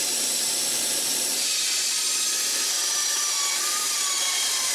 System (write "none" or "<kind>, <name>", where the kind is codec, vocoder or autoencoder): vocoder, BigVGAN v2